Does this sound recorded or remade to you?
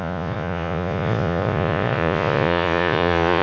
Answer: remade